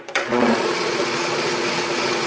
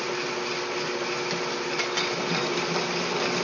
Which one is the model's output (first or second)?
first